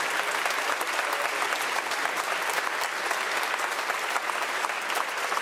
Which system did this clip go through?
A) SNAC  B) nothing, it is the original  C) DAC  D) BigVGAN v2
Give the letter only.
B